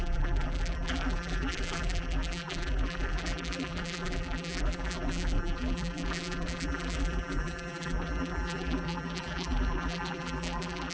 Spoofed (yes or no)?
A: yes